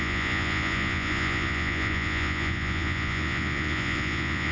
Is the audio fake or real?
fake